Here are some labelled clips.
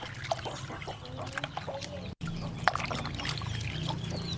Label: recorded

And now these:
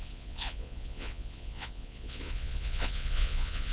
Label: remade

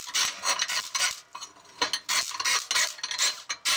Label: recorded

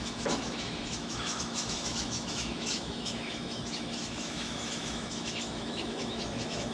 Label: remade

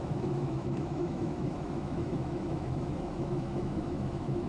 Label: remade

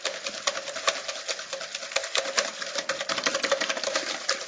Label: recorded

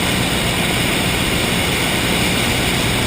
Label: recorded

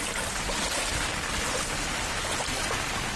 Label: recorded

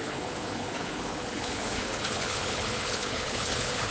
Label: remade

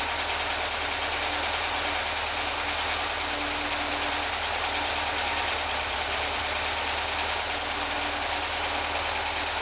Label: recorded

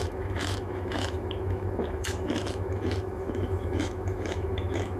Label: remade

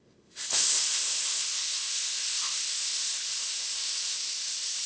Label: remade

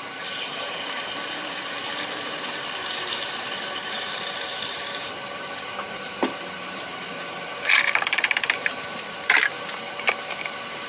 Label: remade